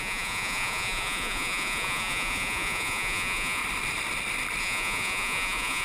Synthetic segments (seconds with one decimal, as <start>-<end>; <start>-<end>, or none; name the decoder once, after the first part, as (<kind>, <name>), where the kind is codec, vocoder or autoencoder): 0.0-3.6 (vocoder, Vocos); 4.6-5.8